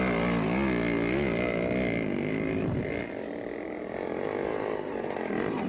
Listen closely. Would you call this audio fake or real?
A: real